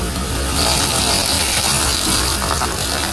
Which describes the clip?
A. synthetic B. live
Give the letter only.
B